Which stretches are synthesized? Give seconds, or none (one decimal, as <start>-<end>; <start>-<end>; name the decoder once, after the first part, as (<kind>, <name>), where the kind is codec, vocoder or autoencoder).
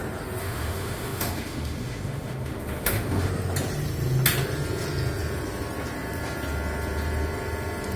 0.4-3.3 (autoencoder, DAC-VAE)